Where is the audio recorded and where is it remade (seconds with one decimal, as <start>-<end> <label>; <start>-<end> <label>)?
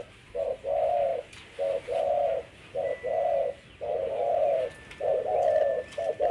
0.0-6.3 recorded